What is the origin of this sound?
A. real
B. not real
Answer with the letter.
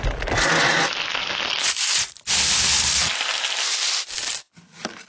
A